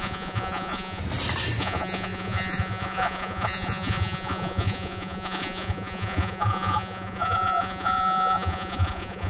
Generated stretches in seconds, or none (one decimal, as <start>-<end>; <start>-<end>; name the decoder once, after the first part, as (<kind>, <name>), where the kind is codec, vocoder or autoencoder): 0.0-1.0 (vocoder, Vocos); 1.6-9.3